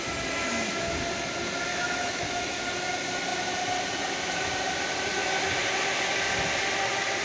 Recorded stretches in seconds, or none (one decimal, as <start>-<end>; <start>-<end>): 0.0-1.7; 2.6-7.2